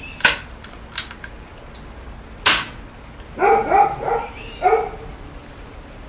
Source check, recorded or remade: recorded